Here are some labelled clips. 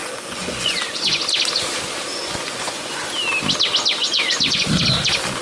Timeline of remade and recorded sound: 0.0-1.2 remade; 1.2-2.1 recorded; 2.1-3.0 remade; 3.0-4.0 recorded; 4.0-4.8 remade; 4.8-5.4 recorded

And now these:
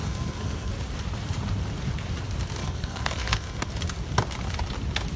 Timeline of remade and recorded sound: 0.0-0.7 remade; 0.7-2.6 recorded; 2.6-3.7 remade; 3.7-5.2 recorded

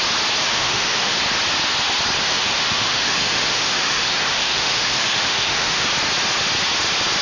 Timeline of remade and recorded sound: 0.0-0.4 recorded; 0.4-1.2 remade; 1.2-2.2 recorded; 2.2-5.9 remade; 5.9-7.2 recorded